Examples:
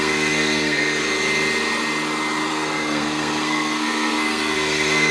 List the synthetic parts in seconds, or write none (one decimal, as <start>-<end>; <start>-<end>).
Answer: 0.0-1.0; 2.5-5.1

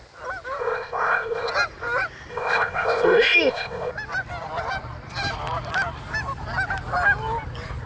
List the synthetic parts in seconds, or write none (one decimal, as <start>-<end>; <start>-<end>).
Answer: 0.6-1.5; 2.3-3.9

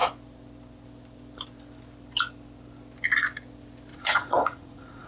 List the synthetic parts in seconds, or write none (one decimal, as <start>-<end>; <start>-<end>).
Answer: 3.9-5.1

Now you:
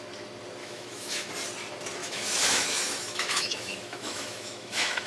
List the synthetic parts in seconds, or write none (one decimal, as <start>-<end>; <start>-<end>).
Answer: 0.6-1.3; 2.0-5.1